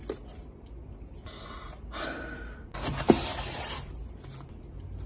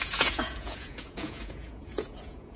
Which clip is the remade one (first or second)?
second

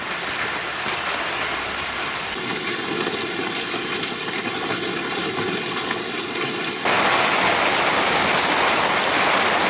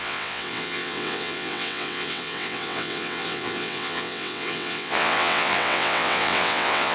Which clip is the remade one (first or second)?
second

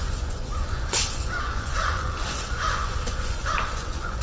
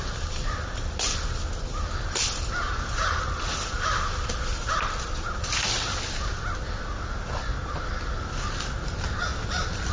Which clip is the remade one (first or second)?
first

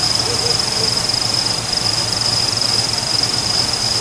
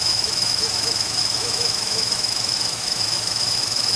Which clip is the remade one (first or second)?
second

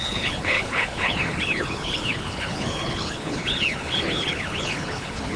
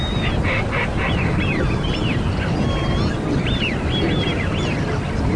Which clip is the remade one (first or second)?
first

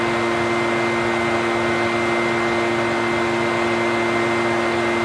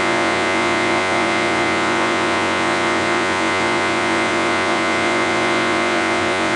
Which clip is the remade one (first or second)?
second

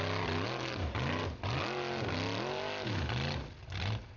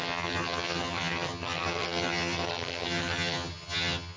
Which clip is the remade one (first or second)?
second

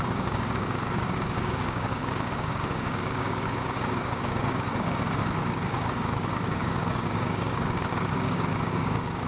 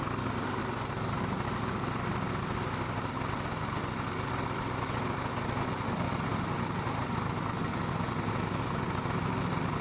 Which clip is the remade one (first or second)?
first